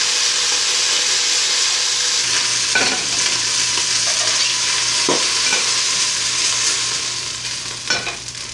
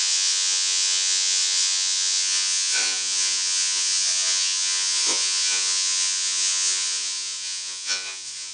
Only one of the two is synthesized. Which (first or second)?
second